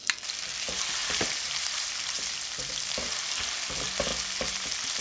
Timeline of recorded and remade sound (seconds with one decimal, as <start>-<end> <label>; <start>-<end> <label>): 0.0-1.0 recorded; 1.0-2.2 remade; 2.2-5.0 recorded